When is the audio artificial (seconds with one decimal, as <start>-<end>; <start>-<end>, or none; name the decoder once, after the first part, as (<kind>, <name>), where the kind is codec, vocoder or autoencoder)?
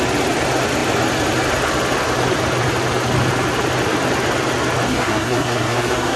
4.9-6.2 (codec, SNAC)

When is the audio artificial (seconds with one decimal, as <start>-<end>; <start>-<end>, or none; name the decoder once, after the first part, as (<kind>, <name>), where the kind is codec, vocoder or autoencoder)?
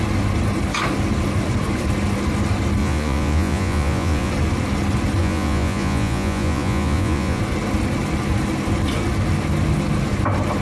2.8-4.3 (vocoder, Vocos); 5.2-7.4